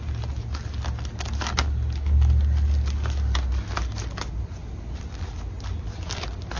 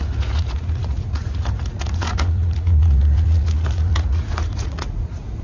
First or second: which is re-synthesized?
second